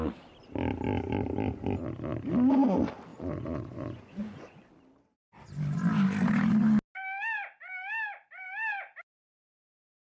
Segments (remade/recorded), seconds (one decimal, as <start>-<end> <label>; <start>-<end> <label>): 0.0-3.1 recorded; 3.1-4.7 remade; 4.7-10.1 recorded